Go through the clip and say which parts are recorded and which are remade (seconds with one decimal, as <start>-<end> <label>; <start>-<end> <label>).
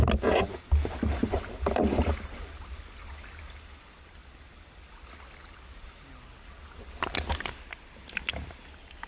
0.0-9.1 recorded